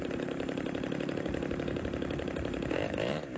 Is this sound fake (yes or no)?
yes